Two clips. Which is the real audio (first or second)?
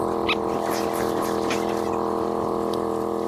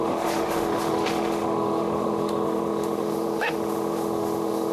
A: first